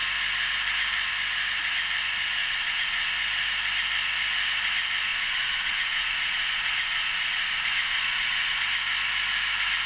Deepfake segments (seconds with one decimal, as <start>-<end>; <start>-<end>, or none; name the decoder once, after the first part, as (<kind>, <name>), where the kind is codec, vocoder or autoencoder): 2.4-3.1 (vocoder, Vocos); 5.1-8.6